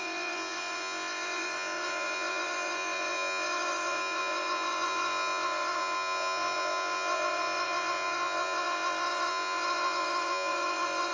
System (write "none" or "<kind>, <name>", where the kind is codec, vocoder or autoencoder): vocoder, Vocos